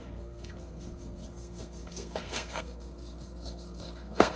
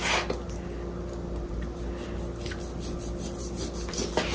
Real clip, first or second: second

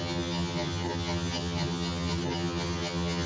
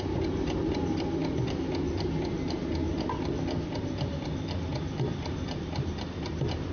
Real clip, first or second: second